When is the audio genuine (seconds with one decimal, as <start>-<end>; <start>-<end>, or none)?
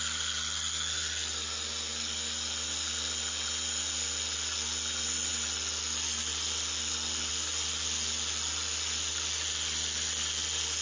0.0-10.8